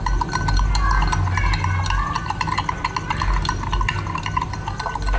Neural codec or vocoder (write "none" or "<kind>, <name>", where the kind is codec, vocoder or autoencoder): none